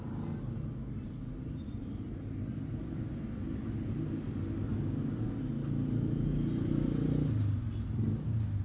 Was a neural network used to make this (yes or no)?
no